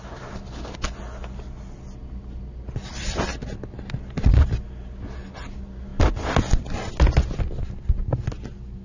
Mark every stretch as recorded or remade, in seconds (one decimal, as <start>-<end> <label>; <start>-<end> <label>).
0.0-8.8 recorded

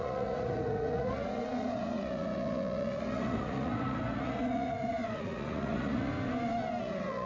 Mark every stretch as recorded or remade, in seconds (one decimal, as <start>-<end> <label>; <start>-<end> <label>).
0.0-6.1 remade; 6.1-6.8 recorded; 6.8-7.3 remade

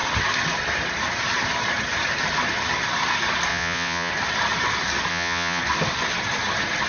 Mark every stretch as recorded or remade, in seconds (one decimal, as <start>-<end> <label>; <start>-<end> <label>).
0.0-3.5 recorded; 3.5-4.1 remade; 4.1-5.1 recorded; 5.1-5.6 remade; 5.6-6.9 recorded

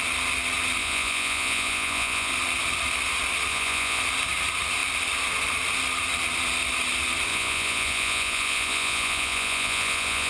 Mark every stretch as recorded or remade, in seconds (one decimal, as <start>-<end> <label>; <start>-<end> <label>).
0.0-0.8 recorded; 0.8-2.3 remade; 2.3-3.5 recorded; 3.5-4.0 remade; 4.0-7.3 recorded; 7.3-10.3 remade

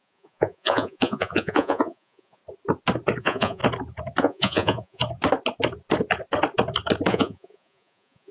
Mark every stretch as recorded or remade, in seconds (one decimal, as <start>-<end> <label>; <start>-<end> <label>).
0.0-2.4 remade; 2.4-3.2 recorded; 3.2-3.6 remade; 3.6-4.2 recorded; 4.2-5.0 remade; 5.0-7.1 recorded; 7.1-8.3 remade

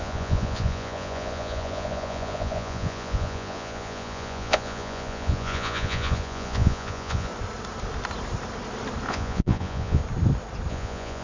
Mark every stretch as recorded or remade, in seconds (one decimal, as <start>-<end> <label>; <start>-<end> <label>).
0.0-7.3 remade; 7.3-9.1 recorded; 9.1-10.0 remade; 10.0-10.7 recorded; 10.7-11.2 remade

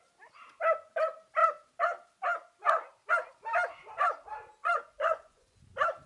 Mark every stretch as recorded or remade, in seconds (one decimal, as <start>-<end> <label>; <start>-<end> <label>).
0.0-4.6 recorded; 4.6-5.6 remade; 5.6-6.1 recorded

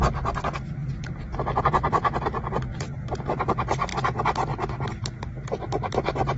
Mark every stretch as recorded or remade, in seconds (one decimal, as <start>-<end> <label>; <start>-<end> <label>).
0.0-6.4 recorded